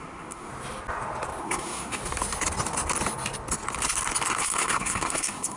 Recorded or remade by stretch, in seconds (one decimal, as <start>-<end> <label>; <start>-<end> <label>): 0.0-0.5 remade; 0.5-1.4 recorded; 1.4-2.0 remade; 2.0-4.4 recorded; 4.4-5.6 remade